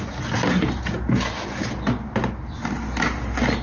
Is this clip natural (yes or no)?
yes